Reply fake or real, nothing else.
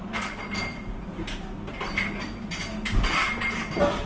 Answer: real